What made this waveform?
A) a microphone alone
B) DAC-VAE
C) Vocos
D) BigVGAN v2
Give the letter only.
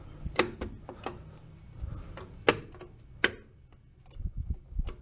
A